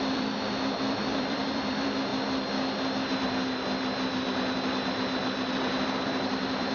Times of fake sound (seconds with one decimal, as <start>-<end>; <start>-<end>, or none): 0.0-2.1; 5.5-6.7